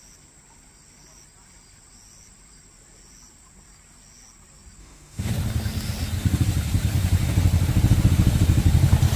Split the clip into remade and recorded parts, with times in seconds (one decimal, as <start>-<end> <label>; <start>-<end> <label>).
0.0-4.8 recorded; 4.8-5.3 remade; 5.3-9.2 recorded